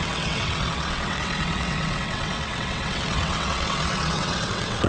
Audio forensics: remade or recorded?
remade